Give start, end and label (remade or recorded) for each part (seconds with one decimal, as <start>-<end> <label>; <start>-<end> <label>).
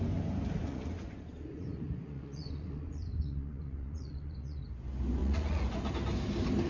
0.0-0.6 recorded; 0.6-4.6 remade; 4.6-5.2 recorded; 5.2-5.9 remade; 5.9-6.7 recorded